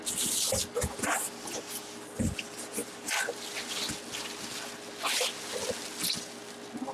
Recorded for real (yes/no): yes